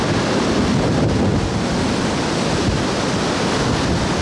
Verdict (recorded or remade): recorded